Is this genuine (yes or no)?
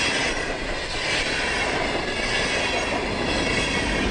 yes